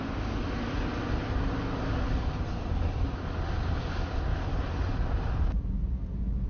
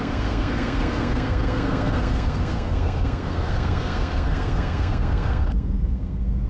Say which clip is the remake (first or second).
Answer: second